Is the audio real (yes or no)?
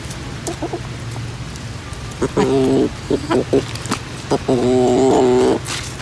yes